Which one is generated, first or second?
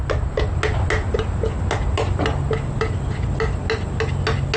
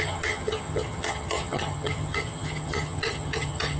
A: second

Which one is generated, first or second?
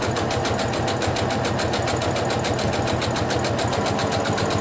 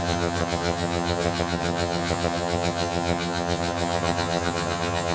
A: second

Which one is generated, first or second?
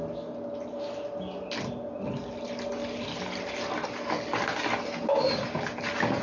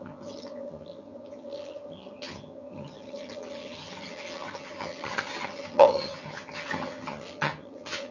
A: second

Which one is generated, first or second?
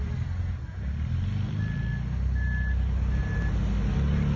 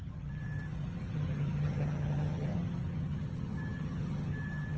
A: second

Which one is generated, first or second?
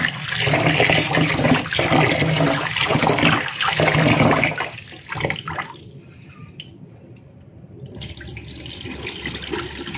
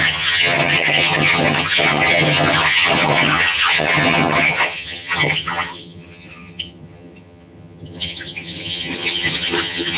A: second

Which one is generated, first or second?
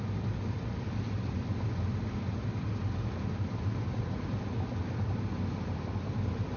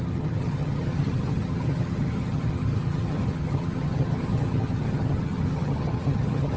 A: second